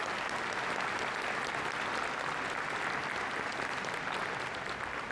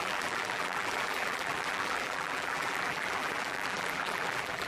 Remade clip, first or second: second